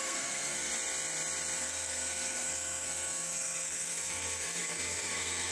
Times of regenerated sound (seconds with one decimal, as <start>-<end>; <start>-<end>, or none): 0.0-0.7; 1.6-5.5